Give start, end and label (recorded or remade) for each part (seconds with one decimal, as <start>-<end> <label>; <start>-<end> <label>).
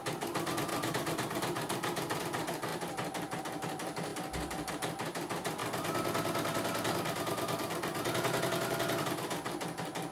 0.0-0.7 recorded; 0.7-2.2 remade; 2.2-10.1 recorded